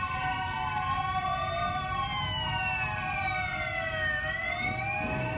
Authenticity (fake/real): real